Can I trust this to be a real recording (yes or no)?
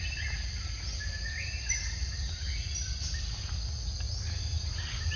yes